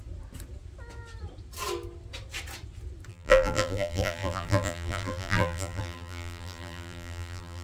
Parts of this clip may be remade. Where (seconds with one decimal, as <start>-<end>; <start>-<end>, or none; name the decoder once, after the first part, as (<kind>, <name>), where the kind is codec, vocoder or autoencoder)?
3.1-7.6 (vocoder, BigVGAN v2)